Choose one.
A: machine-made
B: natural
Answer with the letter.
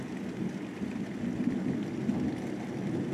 B